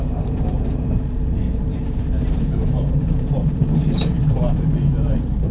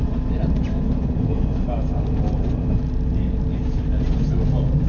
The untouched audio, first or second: second